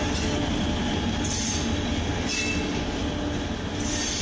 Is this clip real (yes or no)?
yes